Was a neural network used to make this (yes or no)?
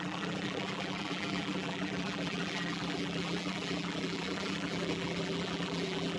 yes